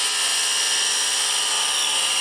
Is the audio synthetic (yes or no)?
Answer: no